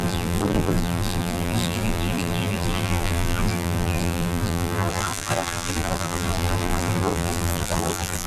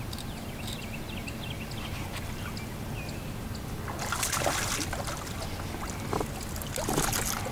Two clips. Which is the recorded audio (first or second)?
second